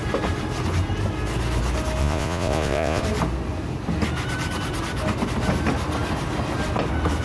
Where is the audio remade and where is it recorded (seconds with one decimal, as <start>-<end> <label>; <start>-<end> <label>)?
0.0-2.0 recorded; 2.0-3.0 remade; 3.0-7.2 recorded